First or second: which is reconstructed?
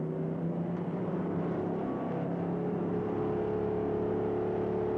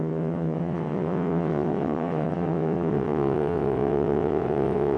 second